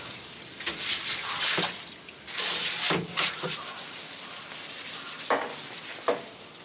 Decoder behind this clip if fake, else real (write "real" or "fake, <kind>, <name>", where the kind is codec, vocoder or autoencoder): real